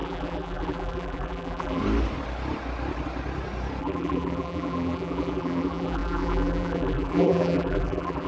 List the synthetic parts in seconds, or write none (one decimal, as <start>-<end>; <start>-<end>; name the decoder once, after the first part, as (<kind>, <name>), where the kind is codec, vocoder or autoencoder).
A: 0.0-1.8 (vocoder, BigVGAN v2); 3.8-8.3